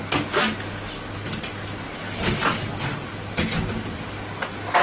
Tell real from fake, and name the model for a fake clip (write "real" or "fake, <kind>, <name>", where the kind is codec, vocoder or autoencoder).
real